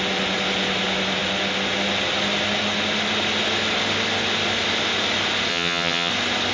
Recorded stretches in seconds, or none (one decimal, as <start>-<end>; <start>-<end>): 0.0-5.5; 6.1-6.5

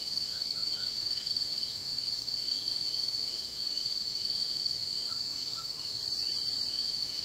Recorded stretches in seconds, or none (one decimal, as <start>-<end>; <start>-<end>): 6.0-6.7

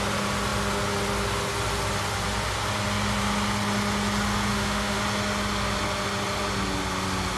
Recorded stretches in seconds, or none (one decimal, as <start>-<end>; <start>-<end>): 0.0-4.5; 5.0-7.4

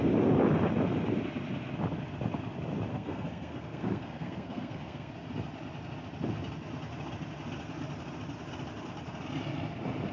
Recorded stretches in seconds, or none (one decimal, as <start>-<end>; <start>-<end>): 0.0-2.9; 5.1-10.1

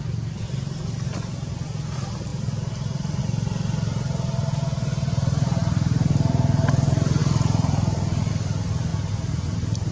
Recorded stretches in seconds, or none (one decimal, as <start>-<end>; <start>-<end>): 0.0-9.9